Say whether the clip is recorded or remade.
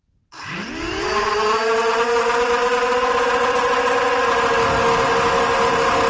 recorded